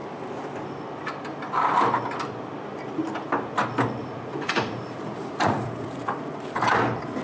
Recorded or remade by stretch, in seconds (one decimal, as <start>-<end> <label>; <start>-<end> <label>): 0.0-4.0 recorded; 4.0-6.3 remade; 6.3-7.2 recorded

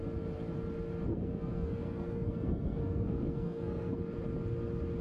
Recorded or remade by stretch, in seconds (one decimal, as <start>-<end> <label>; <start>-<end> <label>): 0.0-1.1 recorded; 1.1-4.0 remade; 4.0-5.0 recorded

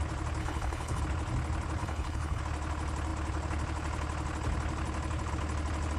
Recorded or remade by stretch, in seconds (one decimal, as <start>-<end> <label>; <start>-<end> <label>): 0.0-0.4 recorded; 0.4-1.0 remade; 1.0-1.8 recorded; 1.8-2.4 remade; 2.4-6.0 recorded